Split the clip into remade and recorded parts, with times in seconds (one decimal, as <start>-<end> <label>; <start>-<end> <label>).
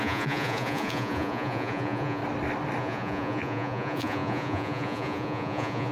0.0-2.2 remade; 2.2-2.8 recorded; 2.8-5.9 remade